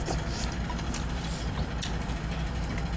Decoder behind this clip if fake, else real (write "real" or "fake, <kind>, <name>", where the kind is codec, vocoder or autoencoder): real